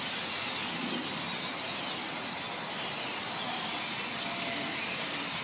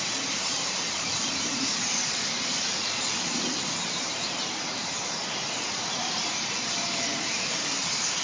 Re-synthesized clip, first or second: second